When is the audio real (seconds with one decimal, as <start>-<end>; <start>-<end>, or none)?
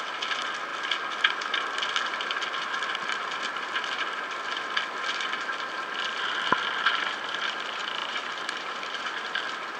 0.0-8.0; 9.4-9.8